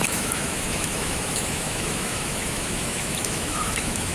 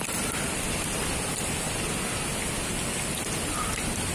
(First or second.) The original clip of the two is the second